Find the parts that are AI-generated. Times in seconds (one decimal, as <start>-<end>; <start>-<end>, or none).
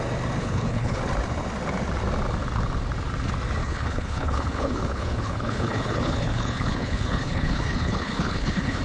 0.4-1.0; 3.6-8.8